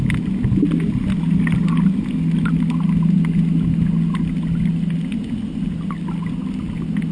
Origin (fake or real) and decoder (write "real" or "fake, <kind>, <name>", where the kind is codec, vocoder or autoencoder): real